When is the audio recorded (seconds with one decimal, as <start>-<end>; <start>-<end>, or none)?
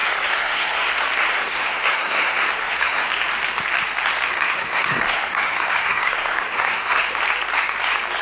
0.9-1.3; 3.1-4.3; 7.0-8.2